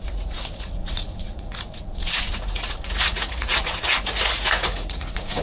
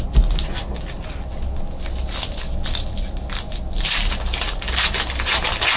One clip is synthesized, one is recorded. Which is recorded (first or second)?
second